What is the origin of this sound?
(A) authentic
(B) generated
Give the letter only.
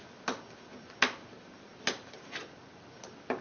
A